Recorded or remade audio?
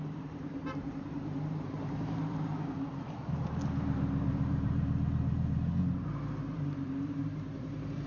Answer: remade